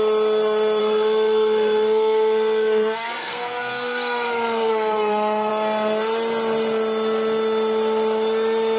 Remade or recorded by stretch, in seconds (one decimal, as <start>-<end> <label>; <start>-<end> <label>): 0.0-0.8 recorded; 0.8-5.5 remade; 5.5-8.8 recorded